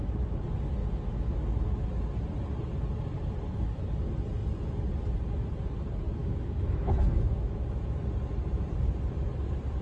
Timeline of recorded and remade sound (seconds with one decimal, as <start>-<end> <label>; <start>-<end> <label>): 0.0-0.8 recorded; 0.8-1.9 remade; 1.9-6.2 recorded; 6.2-8.0 remade; 8.0-9.8 recorded